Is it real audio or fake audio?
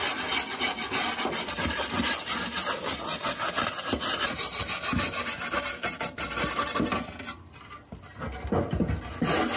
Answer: real